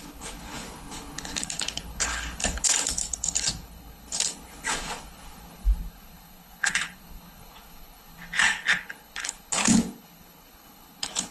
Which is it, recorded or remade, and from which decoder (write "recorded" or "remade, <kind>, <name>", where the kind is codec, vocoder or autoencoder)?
remade, codec, HILCodec